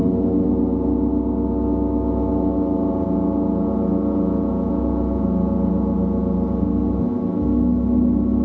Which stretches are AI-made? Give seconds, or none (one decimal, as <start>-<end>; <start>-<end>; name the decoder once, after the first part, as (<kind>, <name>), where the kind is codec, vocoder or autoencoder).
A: none